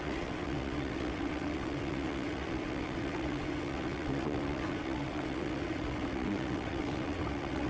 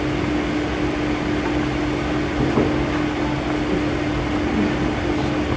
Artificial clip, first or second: first